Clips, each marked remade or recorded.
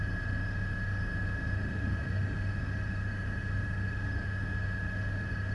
remade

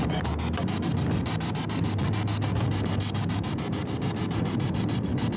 recorded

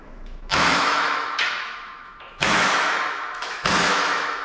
remade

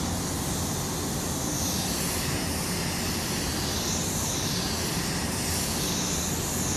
recorded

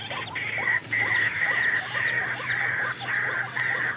recorded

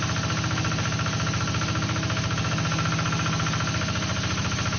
recorded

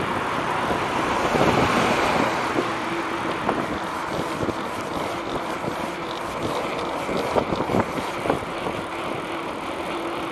recorded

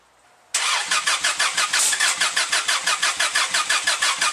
recorded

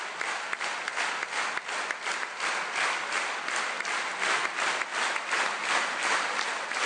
recorded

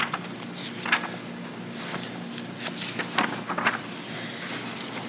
recorded